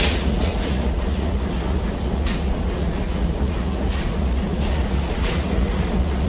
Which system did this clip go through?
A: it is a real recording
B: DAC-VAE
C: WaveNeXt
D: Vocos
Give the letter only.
D